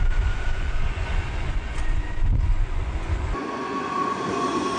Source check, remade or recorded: remade